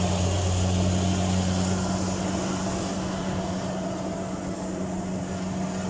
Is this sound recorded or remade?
recorded